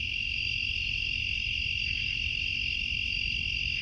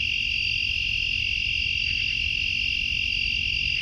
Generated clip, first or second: first